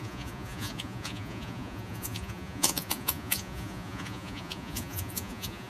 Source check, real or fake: fake